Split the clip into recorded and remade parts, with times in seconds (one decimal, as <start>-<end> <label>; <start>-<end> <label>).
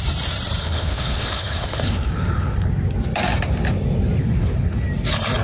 0.0-0.6 recorded; 0.6-2.7 remade; 2.7-4.2 recorded; 4.2-4.8 remade; 4.8-5.4 recorded